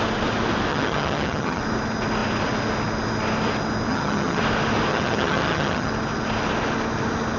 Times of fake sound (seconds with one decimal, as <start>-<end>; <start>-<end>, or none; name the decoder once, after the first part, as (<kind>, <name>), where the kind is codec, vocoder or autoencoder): 0.7-1.6 (vocoder, HiFi-GAN); 3.9-4.4; 4.9-5.9